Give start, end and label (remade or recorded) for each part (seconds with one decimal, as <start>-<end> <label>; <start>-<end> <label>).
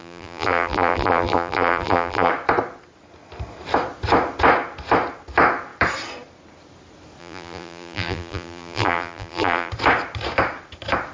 0.0-2.3 remade; 2.3-7.2 recorded; 7.2-9.7 remade; 9.7-11.1 recorded